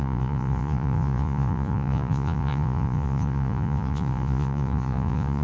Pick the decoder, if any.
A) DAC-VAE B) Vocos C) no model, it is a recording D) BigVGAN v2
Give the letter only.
B